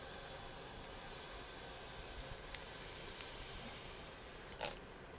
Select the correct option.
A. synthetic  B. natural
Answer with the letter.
B